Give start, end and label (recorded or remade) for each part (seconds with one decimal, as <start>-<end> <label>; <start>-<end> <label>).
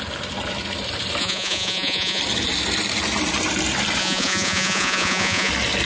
0.0-1.2 recorded; 1.2-2.2 remade; 2.2-4.0 recorded; 4.0-5.5 remade; 5.5-5.9 recorded